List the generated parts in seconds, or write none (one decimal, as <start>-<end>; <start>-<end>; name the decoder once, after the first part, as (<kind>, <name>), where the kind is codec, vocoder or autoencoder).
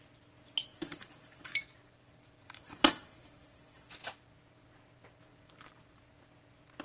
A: 0.7-4.3 (vocoder, BigVGAN v2); 5.3-6.0